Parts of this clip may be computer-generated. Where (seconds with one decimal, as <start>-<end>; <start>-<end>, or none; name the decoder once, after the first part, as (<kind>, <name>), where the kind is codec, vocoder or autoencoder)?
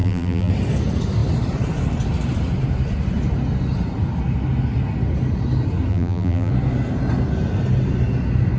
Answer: 0.0-0.5 (vocoder, BigVGAN v2); 5.9-6.5